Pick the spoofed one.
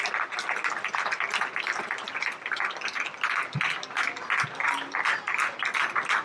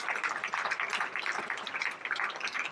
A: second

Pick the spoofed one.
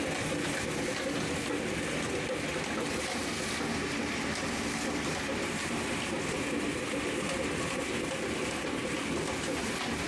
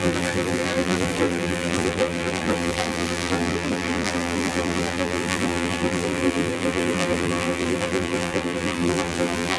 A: second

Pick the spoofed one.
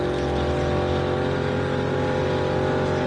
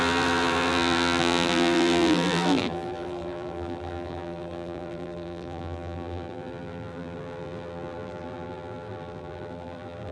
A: second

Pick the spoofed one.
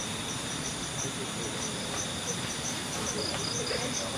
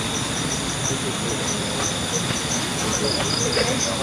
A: first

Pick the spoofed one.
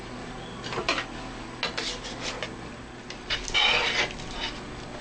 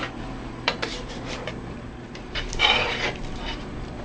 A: second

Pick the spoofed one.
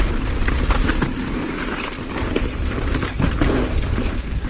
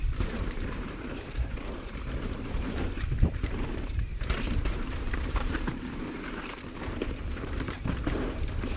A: second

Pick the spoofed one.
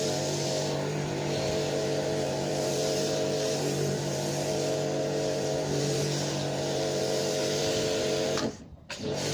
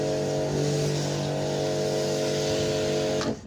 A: first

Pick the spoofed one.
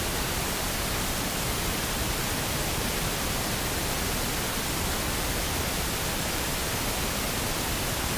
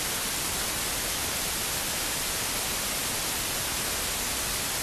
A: first